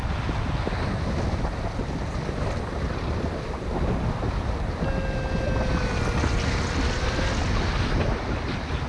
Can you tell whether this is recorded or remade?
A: recorded